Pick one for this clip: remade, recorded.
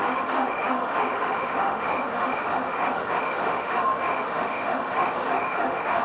remade